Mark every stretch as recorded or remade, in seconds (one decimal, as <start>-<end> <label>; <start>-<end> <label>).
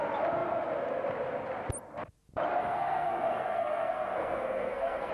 0.0-2.6 recorded; 2.6-5.1 remade